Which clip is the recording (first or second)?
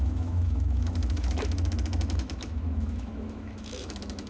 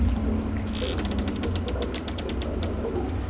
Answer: second